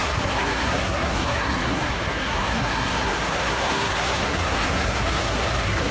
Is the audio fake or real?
fake